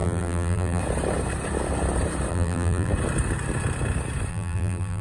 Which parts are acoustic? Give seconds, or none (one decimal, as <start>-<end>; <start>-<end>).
0.8-2.3; 2.9-4.3